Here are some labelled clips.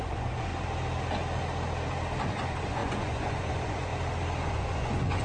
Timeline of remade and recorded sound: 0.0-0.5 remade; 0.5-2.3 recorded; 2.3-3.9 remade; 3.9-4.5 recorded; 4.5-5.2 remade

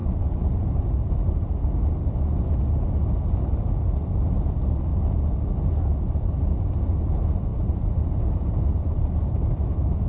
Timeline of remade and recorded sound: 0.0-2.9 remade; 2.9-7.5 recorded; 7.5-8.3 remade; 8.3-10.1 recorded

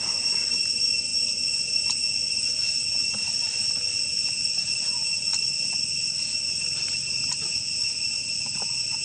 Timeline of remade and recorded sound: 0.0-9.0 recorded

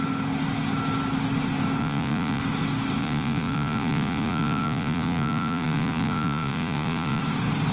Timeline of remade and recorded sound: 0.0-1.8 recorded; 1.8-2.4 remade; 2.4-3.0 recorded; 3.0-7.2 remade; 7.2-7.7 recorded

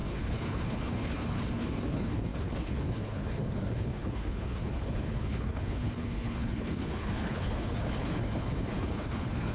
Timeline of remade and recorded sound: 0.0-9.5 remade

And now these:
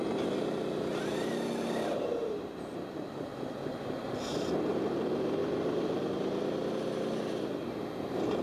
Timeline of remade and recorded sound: 0.0-2.2 recorded; 2.2-4.1 remade; 4.1-5.4 recorded; 5.4-6.0 remade; 6.0-8.4 recorded